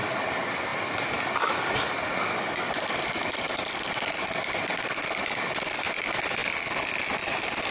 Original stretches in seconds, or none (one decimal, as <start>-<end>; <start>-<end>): 0.7-3.5; 6.4-7.0